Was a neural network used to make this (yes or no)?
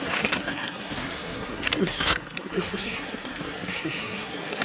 yes